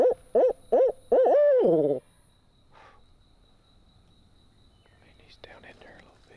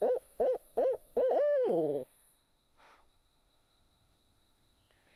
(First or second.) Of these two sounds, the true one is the first